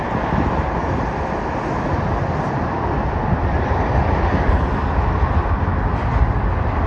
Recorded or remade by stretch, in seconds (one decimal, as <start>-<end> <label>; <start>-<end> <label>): 0.0-6.9 recorded